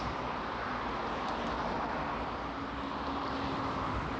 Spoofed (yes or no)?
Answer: no